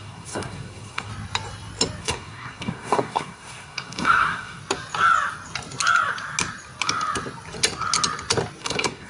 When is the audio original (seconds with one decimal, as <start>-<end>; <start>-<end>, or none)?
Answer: 1.1-2.0; 4.6-8.6